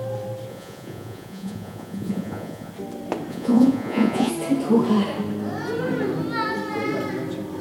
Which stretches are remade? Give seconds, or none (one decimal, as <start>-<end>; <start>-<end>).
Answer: 0.5-2.7; 3.3-4.3